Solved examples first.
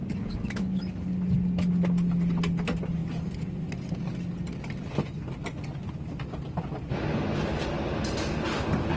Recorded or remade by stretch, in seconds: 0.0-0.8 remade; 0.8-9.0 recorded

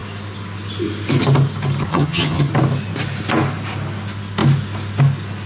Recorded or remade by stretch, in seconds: 0.0-1.9 recorded; 1.9-2.5 remade; 2.5-5.5 recorded